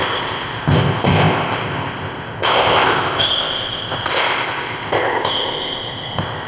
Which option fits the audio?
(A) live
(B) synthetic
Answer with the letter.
B